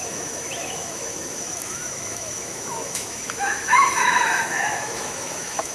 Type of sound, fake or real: fake